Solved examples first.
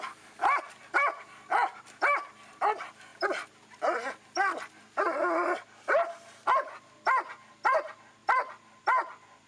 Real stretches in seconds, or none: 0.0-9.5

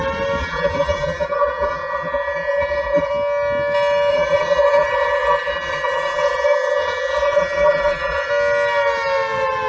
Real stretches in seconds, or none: 0.0-0.4; 3.1-4.1; 8.3-9.7

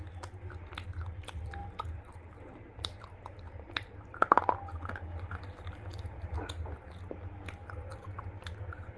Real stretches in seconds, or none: 0.0-1.6; 4.4-9.0

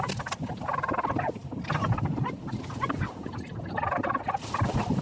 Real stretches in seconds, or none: 0.0-5.0

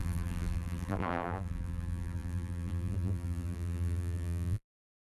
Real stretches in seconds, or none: none